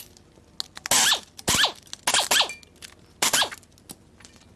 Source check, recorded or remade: recorded